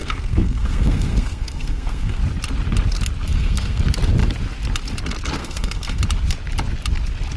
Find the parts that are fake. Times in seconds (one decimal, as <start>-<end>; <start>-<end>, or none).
0.0-2.2; 3.3-3.8; 5.4-6.0